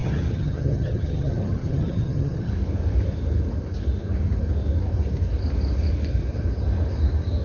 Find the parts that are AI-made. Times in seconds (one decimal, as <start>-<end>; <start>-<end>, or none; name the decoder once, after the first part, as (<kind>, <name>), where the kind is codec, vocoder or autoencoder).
0.0-2.5 (vocoder, HiFi-GAN)